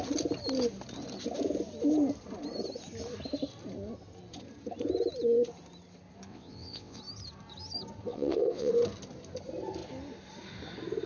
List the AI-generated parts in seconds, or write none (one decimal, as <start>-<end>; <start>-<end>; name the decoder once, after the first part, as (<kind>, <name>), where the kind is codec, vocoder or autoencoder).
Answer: 6.3-7.0 (vocoder, WaveNeXt); 8.1-8.7